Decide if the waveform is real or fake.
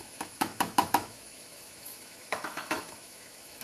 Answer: fake